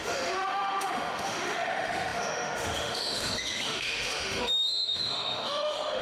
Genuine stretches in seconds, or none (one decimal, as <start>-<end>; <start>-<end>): none